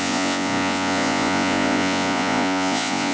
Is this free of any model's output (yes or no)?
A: no